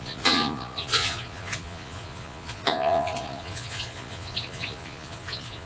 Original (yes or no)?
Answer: no